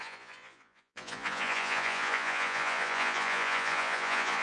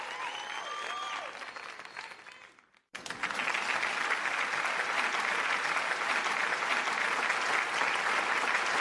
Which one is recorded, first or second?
second